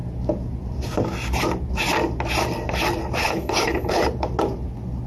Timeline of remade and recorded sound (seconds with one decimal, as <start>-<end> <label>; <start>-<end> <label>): 0.0-3.2 recorded; 3.2-4.0 remade; 4.0-5.1 recorded